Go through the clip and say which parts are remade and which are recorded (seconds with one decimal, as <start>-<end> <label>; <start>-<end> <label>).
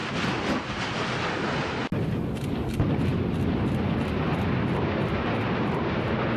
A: 0.0-6.4 recorded